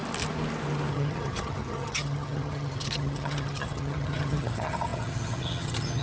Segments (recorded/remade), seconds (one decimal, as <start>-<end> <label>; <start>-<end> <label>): 0.0-0.9 recorded; 0.9-6.0 remade